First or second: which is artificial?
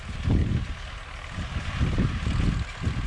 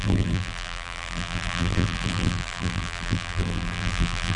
second